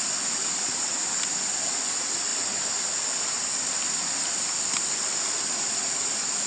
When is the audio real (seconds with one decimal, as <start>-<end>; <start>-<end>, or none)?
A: 0.0-6.5